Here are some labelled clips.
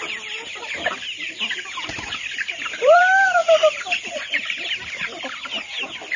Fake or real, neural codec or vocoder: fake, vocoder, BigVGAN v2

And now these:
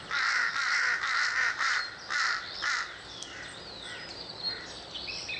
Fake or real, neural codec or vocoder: real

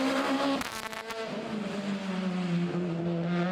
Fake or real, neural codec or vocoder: real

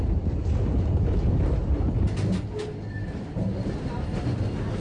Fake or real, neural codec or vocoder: real